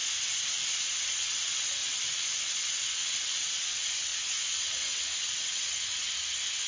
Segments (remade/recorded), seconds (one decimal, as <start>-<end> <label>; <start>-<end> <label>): 0.0-0.5 recorded; 0.5-6.0 remade; 6.0-6.7 recorded